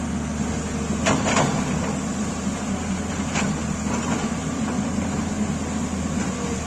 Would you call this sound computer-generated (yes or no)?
no